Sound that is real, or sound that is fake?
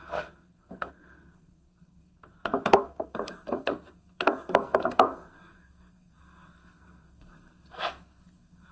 fake